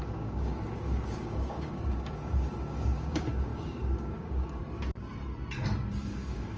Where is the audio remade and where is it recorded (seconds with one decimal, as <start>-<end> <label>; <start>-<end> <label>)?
0.0-4.6 remade; 4.6-6.0 recorded; 6.0-6.6 remade